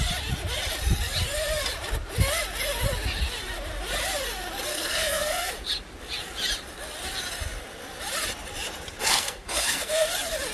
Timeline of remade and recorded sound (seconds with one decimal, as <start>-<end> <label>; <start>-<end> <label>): 0.0-4.7 recorded; 4.7-5.5 remade; 5.5-9.0 recorded; 9.0-10.1 remade; 10.1-10.5 recorded